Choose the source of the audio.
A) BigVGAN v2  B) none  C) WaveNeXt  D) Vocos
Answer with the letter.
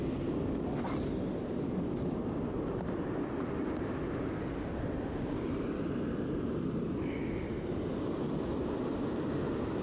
B